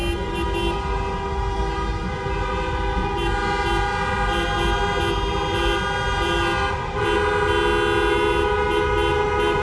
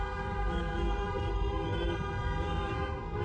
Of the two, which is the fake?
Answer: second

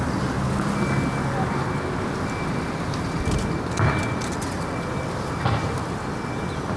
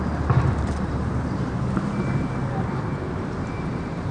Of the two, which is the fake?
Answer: second